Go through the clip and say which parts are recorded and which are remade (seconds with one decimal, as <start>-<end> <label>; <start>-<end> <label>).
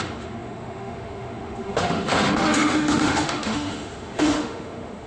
0.0-5.1 remade